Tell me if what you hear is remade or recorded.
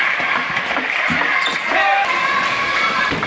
recorded